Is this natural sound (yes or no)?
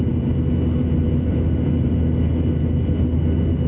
yes